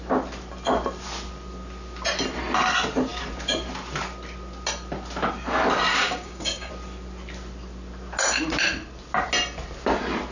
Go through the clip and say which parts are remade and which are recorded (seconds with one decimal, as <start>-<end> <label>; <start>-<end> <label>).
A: 0.0-5.9 recorded; 5.9-6.7 remade; 6.7-10.3 recorded